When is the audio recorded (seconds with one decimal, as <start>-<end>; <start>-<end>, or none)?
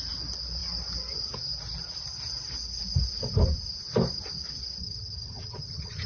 0.0-4.8